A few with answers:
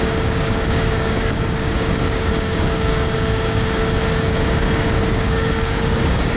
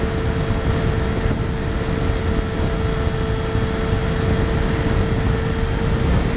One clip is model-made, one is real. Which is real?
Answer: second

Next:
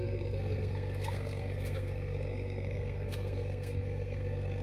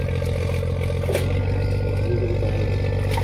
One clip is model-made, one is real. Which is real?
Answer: second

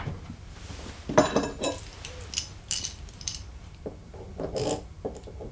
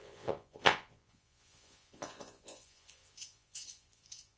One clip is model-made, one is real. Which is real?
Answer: first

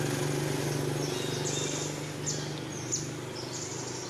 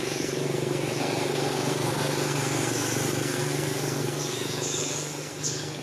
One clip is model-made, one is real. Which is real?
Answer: first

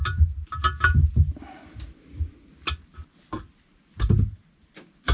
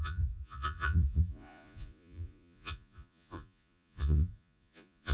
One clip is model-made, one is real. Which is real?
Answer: first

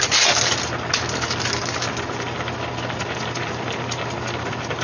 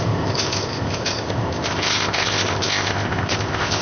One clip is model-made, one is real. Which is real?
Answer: first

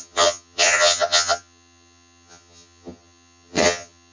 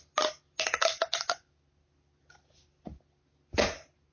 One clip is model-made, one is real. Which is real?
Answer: second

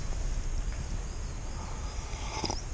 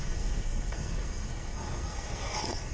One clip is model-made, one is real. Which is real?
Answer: first